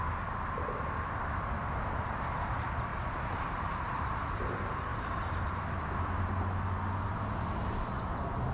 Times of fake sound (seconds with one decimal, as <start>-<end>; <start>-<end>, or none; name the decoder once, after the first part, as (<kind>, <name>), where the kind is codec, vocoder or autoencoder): 2.9-4.3 (vocoder, BigVGAN v2); 4.9-5.5